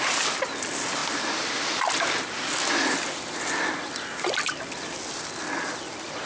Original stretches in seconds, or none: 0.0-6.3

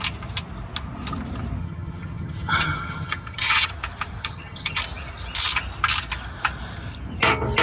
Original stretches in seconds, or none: 0.0-1.6; 3.7-4.2; 4.8-7.6

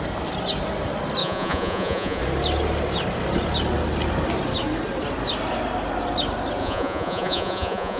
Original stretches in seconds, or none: 0.0-1.2; 2.2-6.6

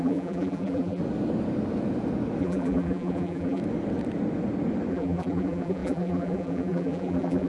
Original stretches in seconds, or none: 1.0-2.4; 3.6-4.9

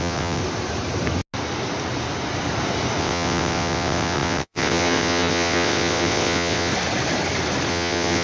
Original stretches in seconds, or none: 0.4-3.0; 6.7-7.7

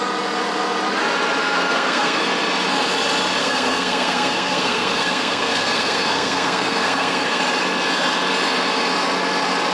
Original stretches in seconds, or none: 0.0-1.4; 2.2-3.4; 7.4-9.7

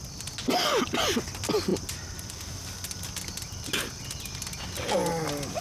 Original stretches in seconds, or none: 0.0-5.6